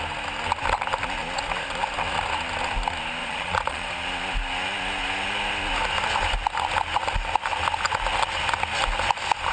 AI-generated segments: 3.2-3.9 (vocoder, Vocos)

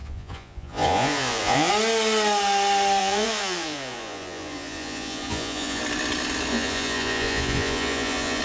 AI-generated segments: 0.0-1.7 (vocoder, Vocos); 3.0-5.8; 6.5-8.4

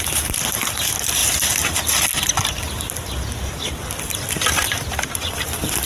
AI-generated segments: none